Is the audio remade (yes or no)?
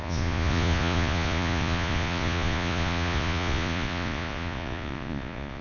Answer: yes